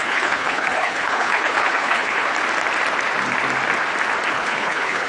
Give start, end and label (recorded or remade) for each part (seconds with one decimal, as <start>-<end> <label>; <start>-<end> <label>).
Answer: 0.0-2.3 remade; 2.3-4.3 recorded; 4.3-5.1 remade